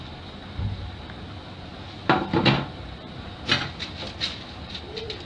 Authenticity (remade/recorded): recorded